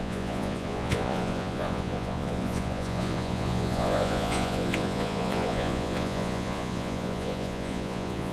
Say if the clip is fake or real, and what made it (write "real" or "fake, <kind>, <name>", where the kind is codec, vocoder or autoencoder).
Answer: fake, vocoder, Vocos